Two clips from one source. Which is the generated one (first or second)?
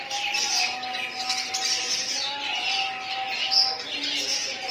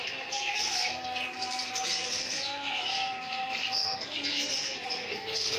second